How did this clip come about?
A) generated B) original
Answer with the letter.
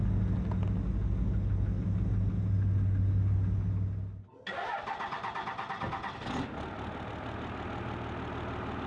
B